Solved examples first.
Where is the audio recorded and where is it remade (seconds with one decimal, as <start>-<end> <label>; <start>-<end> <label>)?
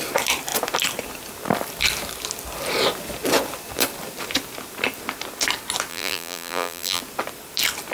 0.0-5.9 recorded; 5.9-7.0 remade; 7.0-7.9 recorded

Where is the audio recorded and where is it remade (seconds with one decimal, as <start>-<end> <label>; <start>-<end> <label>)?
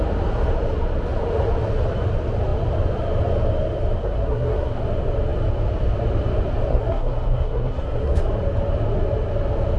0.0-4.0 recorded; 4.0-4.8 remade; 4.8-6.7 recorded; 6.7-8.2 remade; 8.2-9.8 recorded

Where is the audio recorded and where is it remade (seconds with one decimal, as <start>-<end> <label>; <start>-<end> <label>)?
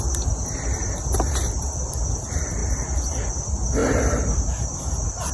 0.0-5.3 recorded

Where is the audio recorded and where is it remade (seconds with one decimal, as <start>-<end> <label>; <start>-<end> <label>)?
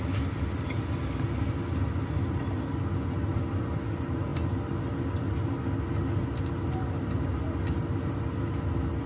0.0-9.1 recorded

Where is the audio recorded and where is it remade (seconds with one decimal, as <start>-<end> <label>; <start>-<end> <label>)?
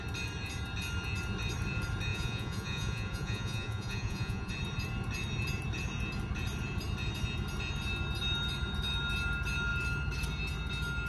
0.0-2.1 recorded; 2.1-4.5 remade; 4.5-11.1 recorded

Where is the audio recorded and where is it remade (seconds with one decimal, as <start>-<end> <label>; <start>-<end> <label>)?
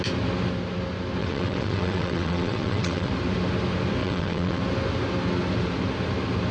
0.0-1.2 recorded; 1.2-3.1 remade; 3.1-4.0 recorded; 4.0-4.6 remade; 4.6-6.5 recorded